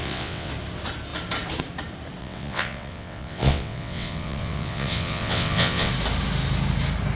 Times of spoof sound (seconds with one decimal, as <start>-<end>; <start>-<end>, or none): 0.0-0.5; 2.2-5.9